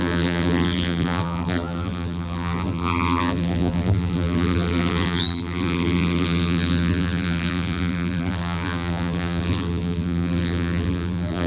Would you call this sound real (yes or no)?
no